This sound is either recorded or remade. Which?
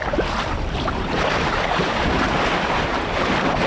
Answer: recorded